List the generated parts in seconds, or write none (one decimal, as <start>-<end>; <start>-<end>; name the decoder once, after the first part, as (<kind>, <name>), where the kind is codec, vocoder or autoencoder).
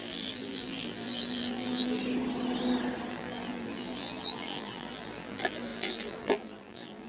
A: 0.0-2.0 (vocoder, BigVGAN v2); 3.1-7.1